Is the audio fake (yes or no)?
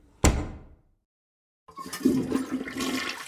no